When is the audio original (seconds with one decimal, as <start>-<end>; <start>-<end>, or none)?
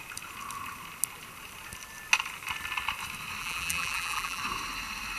0.0-3.4; 4.4-5.2